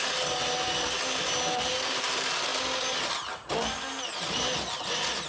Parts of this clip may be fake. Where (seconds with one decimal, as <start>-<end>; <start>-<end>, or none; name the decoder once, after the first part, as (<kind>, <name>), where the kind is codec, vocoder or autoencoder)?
none